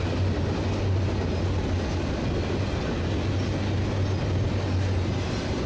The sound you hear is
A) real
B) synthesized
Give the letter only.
A